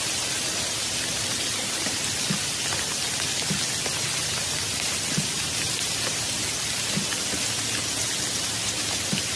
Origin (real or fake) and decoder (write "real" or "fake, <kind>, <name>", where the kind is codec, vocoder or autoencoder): real